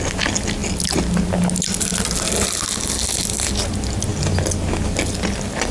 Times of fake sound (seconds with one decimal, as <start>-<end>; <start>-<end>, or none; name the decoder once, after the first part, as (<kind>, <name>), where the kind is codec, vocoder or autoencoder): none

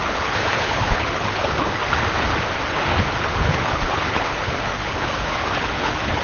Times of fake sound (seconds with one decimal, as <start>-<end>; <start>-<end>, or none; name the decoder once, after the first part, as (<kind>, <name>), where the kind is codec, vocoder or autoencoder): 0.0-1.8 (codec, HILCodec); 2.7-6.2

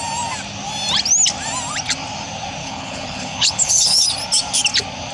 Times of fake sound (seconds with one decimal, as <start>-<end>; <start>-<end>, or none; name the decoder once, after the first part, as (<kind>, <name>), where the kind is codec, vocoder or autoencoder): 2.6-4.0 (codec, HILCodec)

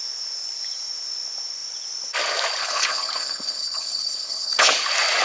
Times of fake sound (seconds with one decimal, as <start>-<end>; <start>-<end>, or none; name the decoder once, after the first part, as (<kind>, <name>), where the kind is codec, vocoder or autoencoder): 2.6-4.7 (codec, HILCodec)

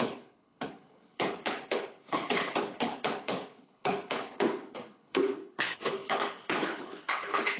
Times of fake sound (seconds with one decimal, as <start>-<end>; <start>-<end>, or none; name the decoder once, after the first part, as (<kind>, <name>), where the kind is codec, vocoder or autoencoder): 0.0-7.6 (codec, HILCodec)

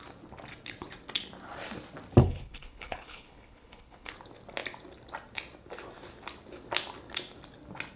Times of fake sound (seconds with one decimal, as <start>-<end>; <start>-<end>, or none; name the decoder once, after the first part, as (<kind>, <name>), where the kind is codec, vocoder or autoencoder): 2.2-4.1 (codec, HILCodec)